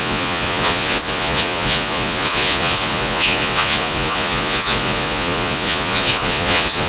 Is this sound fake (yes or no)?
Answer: yes